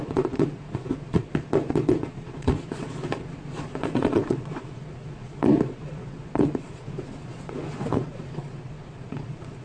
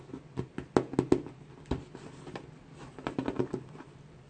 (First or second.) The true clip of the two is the second